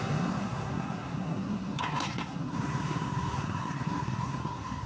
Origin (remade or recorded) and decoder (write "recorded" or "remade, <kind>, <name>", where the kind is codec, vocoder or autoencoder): remade, codec, SNAC